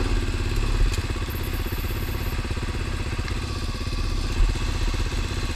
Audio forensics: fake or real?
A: real